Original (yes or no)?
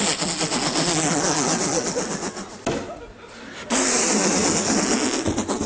yes